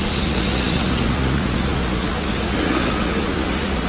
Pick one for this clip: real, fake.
fake